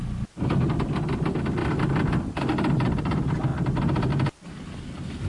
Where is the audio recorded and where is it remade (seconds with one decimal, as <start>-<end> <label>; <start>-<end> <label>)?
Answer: 0.0-5.3 recorded